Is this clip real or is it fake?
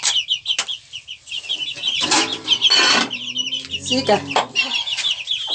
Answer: real